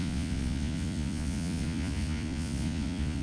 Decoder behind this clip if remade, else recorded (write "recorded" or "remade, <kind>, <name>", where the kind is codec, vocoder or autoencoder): remade, vocoder, Vocos